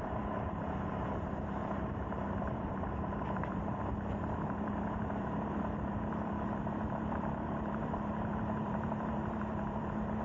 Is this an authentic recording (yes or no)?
no